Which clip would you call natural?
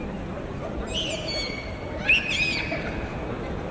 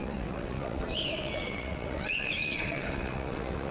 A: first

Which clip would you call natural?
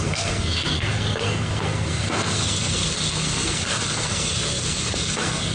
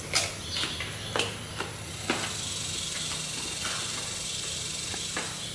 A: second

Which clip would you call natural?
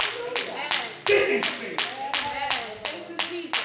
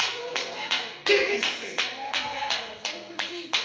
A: first